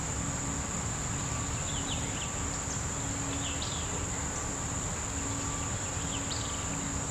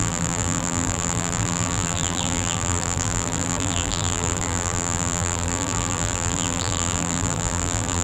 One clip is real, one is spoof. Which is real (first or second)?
first